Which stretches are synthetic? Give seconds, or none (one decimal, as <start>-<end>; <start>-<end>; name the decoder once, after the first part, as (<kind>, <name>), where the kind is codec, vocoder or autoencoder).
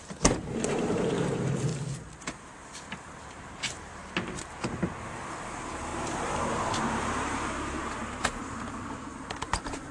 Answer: 0.0-1.7 (vocoder, BigVGAN v2); 2.2-4.0; 5.0-9.9